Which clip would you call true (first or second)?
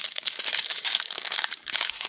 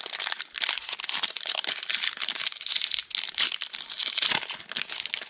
second